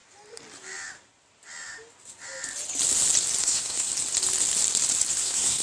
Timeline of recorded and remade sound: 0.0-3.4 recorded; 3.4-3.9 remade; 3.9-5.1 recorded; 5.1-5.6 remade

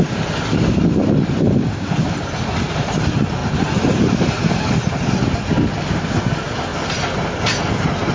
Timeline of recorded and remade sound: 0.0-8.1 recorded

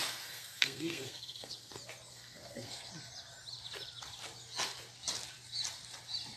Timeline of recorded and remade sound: 0.0-1.7 remade; 1.7-2.1 recorded; 2.1-2.9 remade; 2.9-6.4 recorded

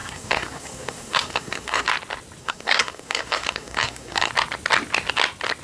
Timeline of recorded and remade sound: 0.0-1.9 remade; 1.9-2.4 recorded; 2.4-4.3 remade; 4.3-5.6 recorded

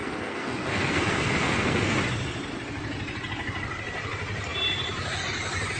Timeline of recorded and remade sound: 0.0-2.0 remade; 2.0-5.8 recorded

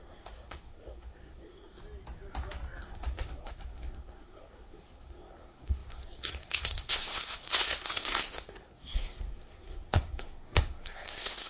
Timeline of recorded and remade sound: 0.0-1.8 remade; 1.8-2.8 recorded; 2.8-11.5 remade

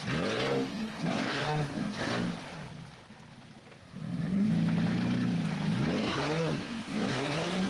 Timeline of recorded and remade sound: 0.0-0.7 recorded; 0.7-2.1 remade; 2.1-3.8 recorded; 3.8-4.5 remade; 4.5-6.0 recorded; 6.0-7.7 remade